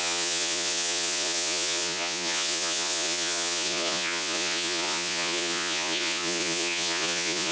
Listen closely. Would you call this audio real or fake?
fake